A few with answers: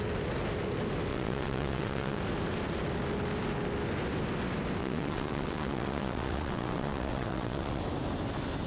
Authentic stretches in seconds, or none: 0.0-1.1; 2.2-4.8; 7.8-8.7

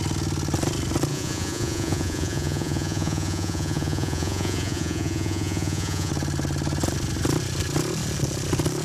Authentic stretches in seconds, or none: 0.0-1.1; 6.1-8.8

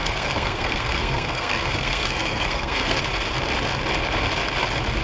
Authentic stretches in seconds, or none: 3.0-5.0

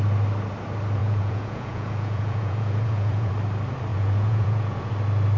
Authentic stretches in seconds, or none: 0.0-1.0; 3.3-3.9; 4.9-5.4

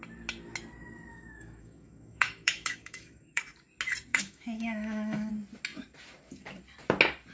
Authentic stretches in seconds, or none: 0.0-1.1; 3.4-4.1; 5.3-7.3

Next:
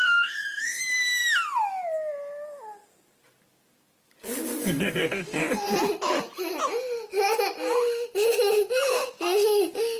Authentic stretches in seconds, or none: 0.8-4.6; 5.7-10.0

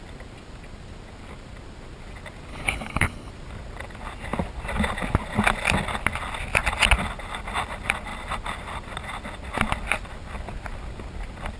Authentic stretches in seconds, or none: 0.0-2.5; 3.3-11.6

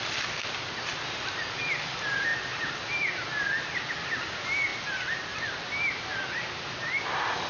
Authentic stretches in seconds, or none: 0.0-7.5